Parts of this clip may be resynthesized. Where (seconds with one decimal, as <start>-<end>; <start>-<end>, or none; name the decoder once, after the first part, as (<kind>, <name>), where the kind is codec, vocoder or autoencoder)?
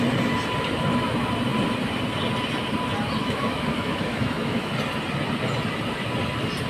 3.2-4.7 (autoencoder, DAC-VAE)